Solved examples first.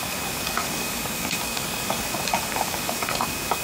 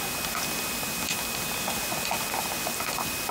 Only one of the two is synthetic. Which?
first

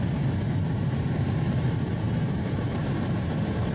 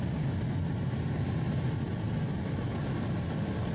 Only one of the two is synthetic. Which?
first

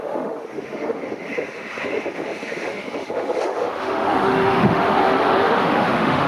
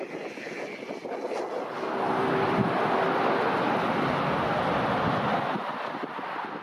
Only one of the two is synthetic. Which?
first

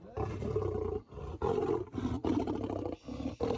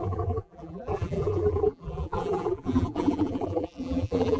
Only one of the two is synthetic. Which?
second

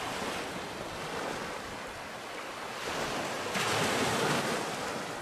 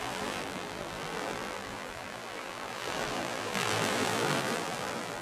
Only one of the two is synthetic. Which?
second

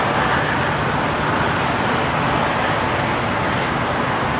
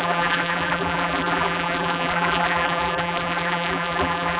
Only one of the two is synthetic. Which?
second